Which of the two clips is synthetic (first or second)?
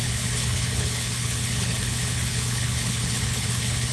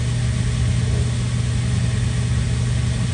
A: first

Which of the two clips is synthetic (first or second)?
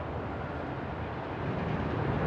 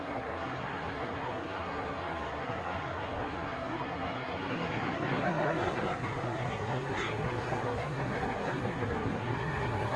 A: second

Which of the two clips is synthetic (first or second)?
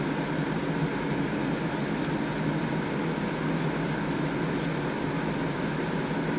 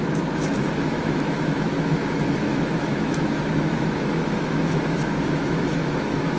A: second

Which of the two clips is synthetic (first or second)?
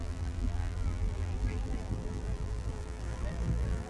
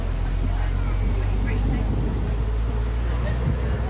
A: first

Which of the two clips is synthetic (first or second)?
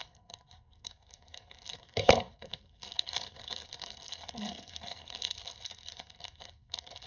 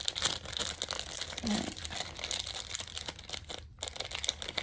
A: first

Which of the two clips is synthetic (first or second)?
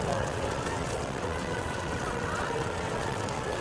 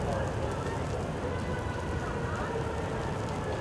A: first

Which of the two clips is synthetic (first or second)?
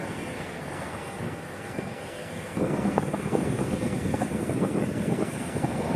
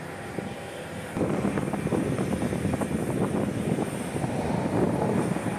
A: first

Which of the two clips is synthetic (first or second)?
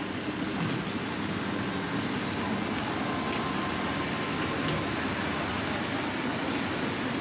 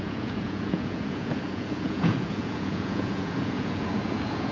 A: second